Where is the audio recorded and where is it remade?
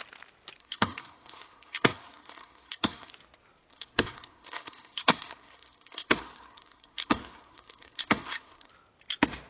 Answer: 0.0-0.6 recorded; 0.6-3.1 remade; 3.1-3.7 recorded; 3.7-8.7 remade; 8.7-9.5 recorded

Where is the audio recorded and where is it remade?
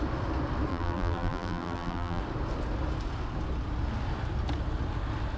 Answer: 0.0-0.7 recorded; 0.7-2.2 remade; 2.2-5.4 recorded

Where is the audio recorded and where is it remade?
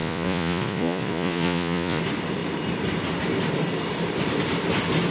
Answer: 0.0-2.0 remade; 2.0-5.1 recorded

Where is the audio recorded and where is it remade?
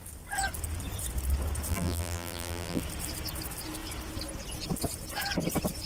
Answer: 0.0-1.7 recorded; 1.7-2.8 remade; 2.8-5.9 recorded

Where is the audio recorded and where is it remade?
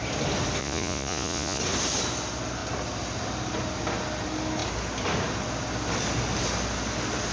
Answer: 0.0-0.6 recorded; 0.6-1.6 remade; 1.6-7.3 recorded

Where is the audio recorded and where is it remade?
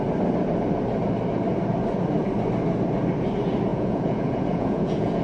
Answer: 0.0-3.7 recorded; 3.7-5.2 remade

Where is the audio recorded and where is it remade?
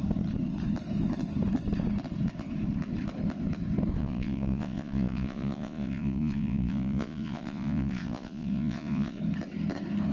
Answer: 0.0-4.0 recorded; 4.0-9.2 remade; 9.2-10.1 recorded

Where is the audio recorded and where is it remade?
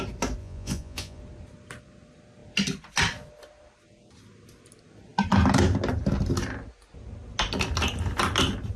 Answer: 0.0-0.4 recorded; 0.4-1.2 remade; 1.2-8.8 recorded